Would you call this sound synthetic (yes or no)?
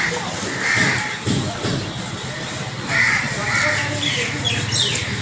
no